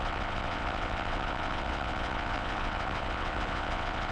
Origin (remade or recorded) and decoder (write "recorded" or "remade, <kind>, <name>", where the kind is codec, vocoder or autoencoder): remade, vocoder, WaveNeXt